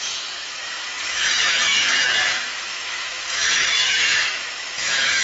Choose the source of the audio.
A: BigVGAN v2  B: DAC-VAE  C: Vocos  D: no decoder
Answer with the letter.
B